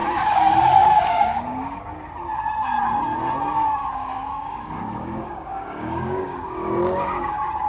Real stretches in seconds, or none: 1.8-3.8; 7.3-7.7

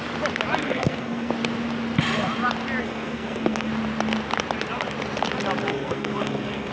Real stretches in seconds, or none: 0.0-0.6; 1.3-2.8; 3.7-5.7

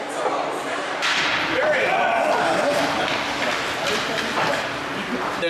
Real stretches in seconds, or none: 0.0-0.6; 1.7-5.5

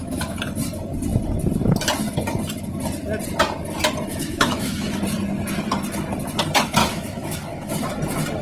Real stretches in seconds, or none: 0.0-4.1; 5.0-6.8; 7.7-8.4

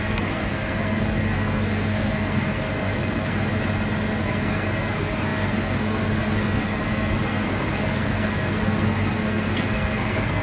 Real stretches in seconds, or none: 3.5-4.2